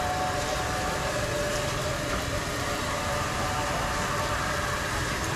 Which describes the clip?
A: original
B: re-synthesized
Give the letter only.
A